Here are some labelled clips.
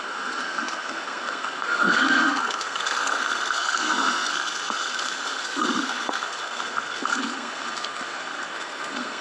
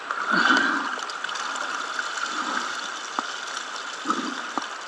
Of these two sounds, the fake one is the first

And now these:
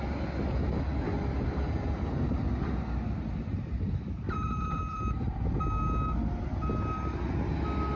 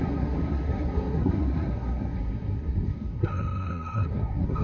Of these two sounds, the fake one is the second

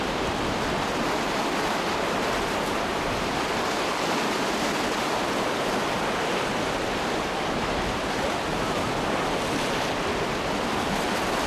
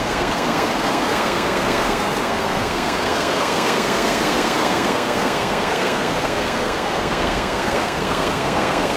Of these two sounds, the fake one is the second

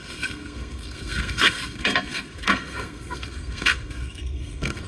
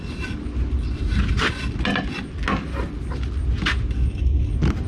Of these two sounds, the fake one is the first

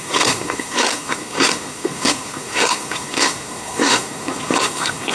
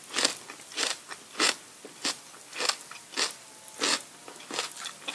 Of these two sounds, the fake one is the first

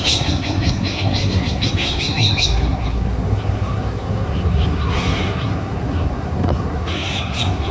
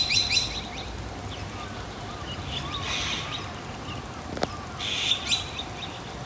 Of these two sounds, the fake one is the first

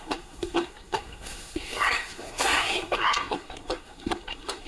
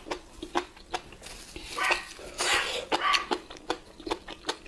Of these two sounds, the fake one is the first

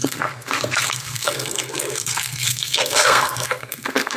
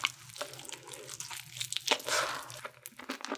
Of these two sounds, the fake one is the first